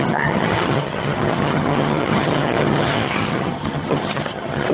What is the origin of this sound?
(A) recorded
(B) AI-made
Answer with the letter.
B